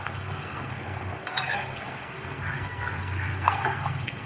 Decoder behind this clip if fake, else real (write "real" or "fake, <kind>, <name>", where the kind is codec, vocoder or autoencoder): fake, codec, SNAC